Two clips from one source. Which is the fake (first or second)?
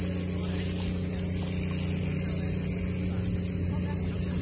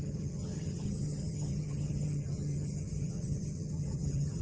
second